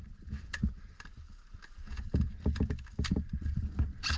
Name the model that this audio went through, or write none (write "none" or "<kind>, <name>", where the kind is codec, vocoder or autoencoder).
none